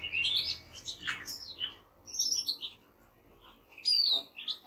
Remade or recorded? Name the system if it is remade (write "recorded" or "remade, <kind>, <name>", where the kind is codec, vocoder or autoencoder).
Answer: recorded